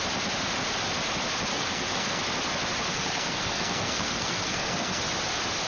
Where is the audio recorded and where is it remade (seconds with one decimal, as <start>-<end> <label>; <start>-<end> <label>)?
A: 0.0-1.5 recorded; 1.5-2.2 remade; 2.2-2.9 recorded; 2.9-5.0 remade; 5.0-5.7 recorded